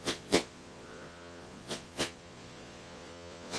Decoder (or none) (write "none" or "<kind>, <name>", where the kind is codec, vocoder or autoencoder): vocoder, Vocos